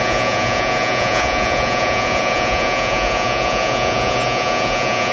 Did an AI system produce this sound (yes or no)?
yes